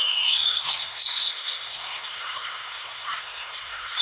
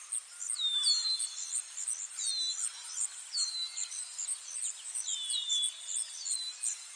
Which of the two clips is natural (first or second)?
second